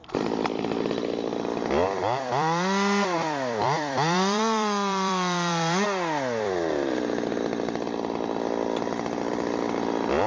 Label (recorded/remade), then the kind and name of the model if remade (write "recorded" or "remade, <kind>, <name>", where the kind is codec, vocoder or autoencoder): remade, vocoder, BigVGAN v2